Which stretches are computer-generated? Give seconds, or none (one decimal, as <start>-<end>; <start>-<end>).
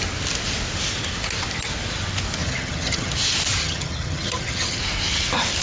2.4-3.1; 3.6-4.8